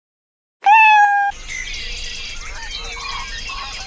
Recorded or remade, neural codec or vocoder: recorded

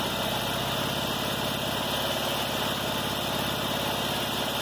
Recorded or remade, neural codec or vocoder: recorded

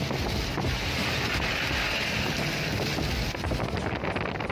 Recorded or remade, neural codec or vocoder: recorded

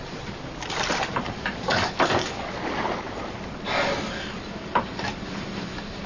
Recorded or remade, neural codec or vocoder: recorded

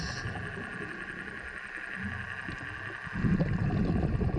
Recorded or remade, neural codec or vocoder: recorded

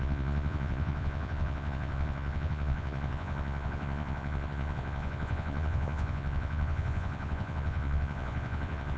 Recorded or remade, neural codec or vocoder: remade, vocoder, Vocos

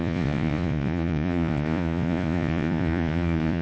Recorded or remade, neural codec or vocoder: remade, vocoder, Vocos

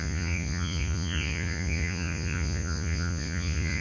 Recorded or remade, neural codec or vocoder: remade, vocoder, Vocos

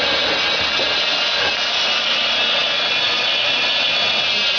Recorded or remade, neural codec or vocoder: recorded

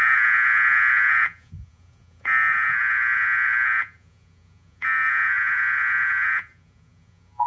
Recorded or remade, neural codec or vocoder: remade, vocoder, Vocos